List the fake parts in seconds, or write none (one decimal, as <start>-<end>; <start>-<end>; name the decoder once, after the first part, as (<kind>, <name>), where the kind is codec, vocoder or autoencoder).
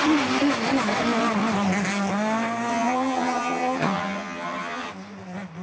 2.7-4.9 (vocoder, HiFi-GAN)